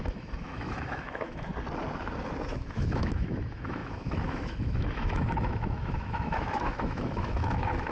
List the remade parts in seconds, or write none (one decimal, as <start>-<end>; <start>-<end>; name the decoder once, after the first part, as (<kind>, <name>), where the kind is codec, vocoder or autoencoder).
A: 0.0-1.5 (autoencoder, DAC-VAE); 2.5-7.9